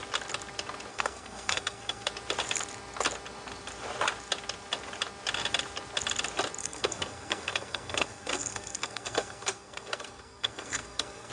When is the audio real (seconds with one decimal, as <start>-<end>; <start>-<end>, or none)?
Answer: 0.0-0.9; 2.1-6.6

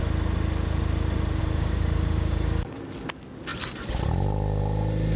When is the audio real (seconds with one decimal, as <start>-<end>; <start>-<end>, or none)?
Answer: 0.0-1.4; 2.8-5.2

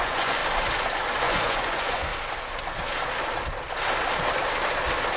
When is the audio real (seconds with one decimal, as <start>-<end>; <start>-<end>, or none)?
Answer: 0.4-1.2; 2.1-5.2